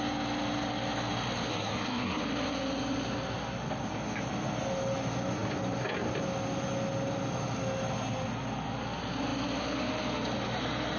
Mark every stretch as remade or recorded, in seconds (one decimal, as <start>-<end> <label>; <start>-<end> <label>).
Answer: 0.0-1.5 recorded; 1.5-2.2 remade; 2.2-11.0 recorded